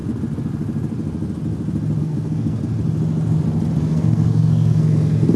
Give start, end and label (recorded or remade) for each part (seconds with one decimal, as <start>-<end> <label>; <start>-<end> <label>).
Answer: 0.0-2.0 recorded; 2.0-2.6 remade; 2.6-3.8 recorded; 3.8-5.4 remade